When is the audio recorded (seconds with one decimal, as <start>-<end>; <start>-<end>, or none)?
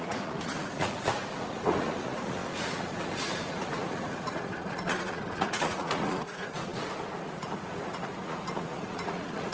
none